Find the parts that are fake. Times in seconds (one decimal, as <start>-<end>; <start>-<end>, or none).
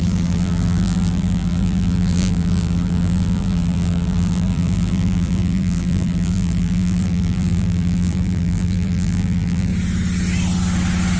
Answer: 0.0-9.7